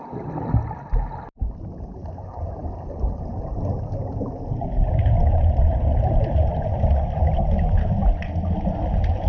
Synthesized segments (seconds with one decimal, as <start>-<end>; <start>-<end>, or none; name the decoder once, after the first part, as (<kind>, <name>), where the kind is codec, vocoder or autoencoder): none